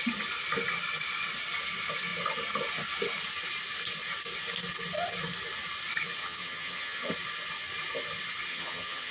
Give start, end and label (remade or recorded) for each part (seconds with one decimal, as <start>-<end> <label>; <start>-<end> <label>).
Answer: 0.0-6.2 recorded; 6.2-7.1 remade; 7.1-8.5 recorded; 8.5-9.1 remade

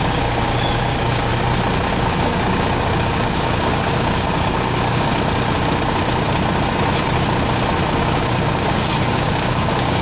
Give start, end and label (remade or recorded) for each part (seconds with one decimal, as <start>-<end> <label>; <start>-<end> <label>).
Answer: 0.0-1.3 remade; 1.3-1.9 recorded; 1.9-5.1 remade; 5.1-8.0 recorded; 8.0-10.0 remade

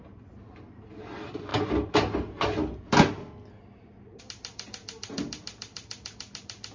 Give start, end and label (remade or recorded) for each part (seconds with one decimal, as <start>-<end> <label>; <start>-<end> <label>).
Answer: 0.0-6.7 recorded

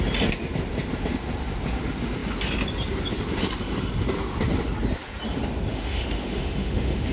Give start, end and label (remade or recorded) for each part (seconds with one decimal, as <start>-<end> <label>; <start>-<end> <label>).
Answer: 0.0-5.7 recorded; 5.7-7.1 remade

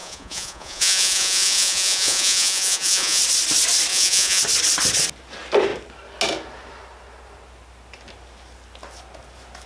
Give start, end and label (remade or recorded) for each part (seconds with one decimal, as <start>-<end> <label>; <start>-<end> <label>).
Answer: 0.0-3.2 remade; 3.2-3.9 recorded; 3.9-4.4 remade; 4.4-9.7 recorded

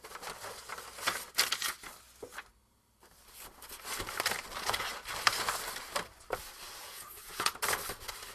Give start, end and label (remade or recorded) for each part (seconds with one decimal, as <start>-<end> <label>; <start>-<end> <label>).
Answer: 0.0-6.8 recorded; 6.8-7.5 remade; 7.5-8.3 recorded

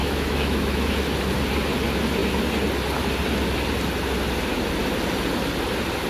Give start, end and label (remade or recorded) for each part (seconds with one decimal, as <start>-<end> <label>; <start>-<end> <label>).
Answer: 0.0-0.9 remade; 0.9-6.1 recorded